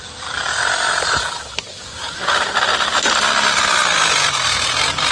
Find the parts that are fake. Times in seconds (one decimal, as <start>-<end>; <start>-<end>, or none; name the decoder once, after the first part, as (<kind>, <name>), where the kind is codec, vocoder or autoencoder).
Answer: none